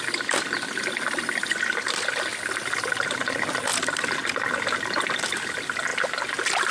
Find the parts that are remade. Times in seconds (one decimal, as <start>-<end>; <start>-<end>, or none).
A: none